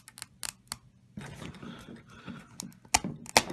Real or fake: real